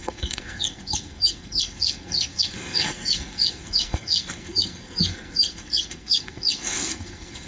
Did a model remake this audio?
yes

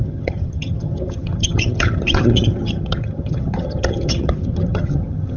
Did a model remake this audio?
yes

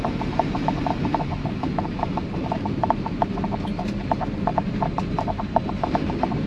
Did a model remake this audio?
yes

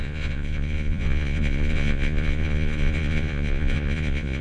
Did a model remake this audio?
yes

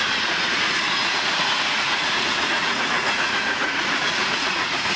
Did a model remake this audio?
yes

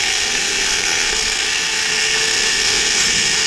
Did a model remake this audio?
yes